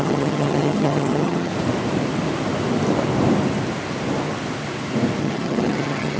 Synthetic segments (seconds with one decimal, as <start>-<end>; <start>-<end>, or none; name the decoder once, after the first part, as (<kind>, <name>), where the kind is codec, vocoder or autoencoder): 0.0-1.5 (vocoder, HiFi-GAN); 5.2-6.2